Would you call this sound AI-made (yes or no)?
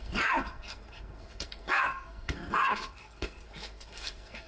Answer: yes